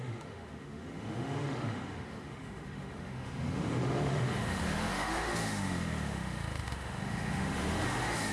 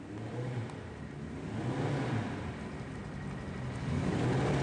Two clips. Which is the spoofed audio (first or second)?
first